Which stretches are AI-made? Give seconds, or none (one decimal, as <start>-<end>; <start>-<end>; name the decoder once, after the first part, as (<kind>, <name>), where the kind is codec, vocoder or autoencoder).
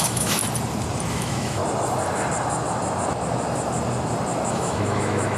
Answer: 0.0-0.4 (autoencoder, DAC-VAE); 1.1-1.6; 4.5-5.4